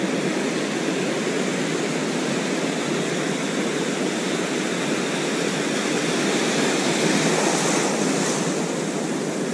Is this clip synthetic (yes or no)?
no